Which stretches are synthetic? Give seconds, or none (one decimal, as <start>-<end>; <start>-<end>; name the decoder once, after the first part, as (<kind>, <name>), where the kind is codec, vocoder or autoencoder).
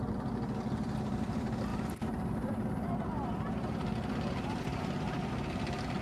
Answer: 1.7-5.3 (vocoder, BigVGAN v2)